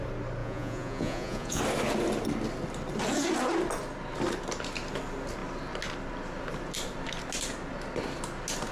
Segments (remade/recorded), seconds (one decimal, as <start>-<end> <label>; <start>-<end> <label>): 0.0-0.4 recorded; 0.4-1.6 remade; 1.6-8.7 recorded